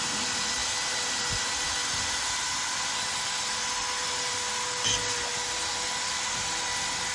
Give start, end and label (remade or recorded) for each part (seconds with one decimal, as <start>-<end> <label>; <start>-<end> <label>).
0.0-7.1 recorded